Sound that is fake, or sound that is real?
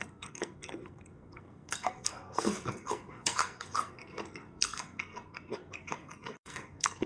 fake